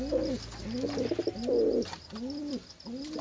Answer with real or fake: real